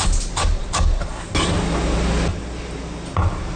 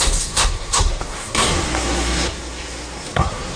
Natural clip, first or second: first